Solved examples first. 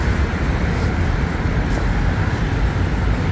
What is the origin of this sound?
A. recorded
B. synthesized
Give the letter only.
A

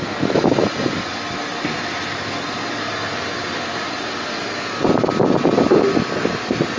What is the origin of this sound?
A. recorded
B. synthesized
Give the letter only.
A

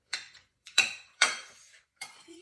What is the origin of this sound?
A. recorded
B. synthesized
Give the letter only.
B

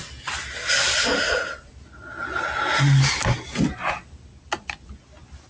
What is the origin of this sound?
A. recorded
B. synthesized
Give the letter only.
A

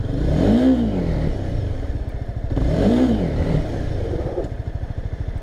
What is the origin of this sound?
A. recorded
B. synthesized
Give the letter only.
B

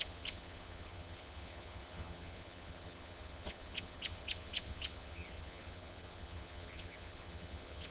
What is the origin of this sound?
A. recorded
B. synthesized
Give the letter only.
B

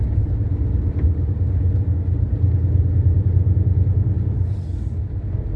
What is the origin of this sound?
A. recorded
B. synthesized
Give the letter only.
A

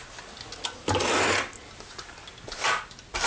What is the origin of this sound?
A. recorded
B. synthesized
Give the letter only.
A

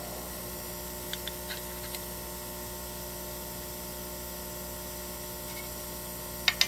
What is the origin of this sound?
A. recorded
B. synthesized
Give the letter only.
A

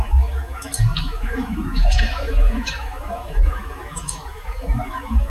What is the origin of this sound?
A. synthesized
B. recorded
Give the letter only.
A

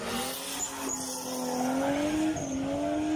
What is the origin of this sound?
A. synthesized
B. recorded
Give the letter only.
B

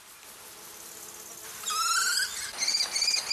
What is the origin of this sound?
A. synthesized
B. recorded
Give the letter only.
B